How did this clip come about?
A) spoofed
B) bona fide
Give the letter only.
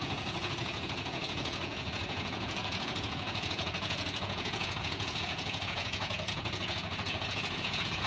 A